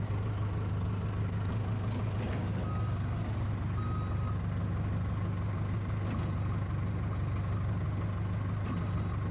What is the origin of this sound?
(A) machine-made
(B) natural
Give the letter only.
B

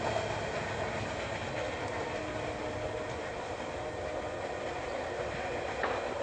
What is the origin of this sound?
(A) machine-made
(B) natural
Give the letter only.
B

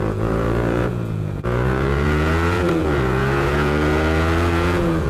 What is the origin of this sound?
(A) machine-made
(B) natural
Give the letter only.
A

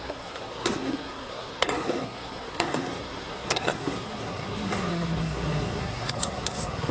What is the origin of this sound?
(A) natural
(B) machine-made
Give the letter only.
B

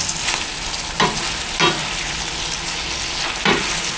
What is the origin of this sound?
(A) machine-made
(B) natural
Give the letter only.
B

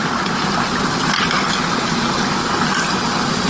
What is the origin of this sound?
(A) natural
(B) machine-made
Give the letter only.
A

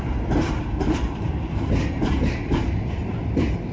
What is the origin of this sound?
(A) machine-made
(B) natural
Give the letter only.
B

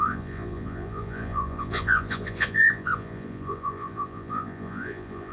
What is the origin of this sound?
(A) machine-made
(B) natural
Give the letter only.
A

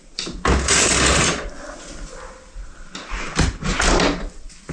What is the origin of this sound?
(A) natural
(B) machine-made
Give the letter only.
A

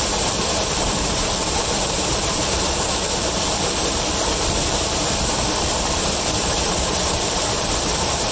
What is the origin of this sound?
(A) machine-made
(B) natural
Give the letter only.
A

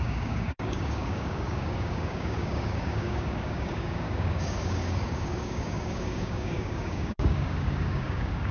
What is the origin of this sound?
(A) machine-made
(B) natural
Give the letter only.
A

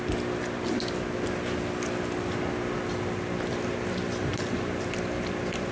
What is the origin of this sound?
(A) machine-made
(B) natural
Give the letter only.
B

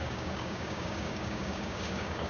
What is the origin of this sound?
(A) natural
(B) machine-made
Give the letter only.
B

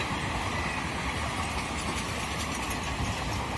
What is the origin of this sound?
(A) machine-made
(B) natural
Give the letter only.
B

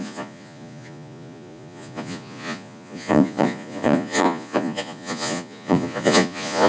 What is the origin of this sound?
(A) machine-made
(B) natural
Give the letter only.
A